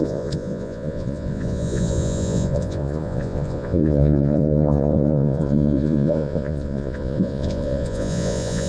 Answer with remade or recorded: remade